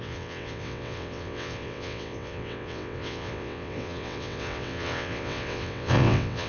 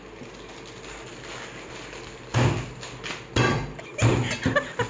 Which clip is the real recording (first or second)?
second